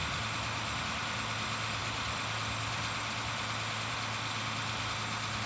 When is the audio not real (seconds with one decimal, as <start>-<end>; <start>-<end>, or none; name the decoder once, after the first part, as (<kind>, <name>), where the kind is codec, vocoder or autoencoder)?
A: none

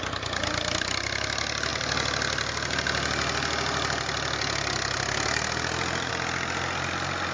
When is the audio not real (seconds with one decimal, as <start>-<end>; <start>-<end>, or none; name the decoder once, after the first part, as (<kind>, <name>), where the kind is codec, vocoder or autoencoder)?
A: none

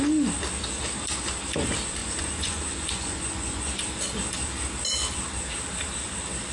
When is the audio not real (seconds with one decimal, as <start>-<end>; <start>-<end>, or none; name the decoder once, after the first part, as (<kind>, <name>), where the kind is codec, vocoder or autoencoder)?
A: 2.0-3.8 (vocoder, Vocos)

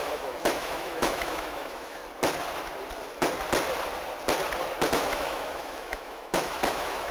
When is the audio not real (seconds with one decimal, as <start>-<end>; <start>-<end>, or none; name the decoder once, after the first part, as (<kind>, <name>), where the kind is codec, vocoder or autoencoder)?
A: 0.0-2.0 (autoencoder, DAC-VAE); 4.9-7.1

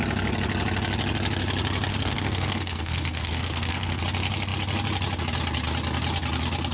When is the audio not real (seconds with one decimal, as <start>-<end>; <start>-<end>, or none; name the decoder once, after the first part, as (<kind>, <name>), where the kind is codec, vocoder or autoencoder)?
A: 1.9-4.0 (codec, SNAC)